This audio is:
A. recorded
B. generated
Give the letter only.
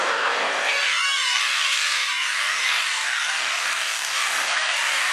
B